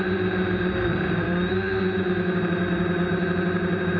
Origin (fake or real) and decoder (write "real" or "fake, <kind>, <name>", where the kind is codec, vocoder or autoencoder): fake, vocoder, BigVGAN v2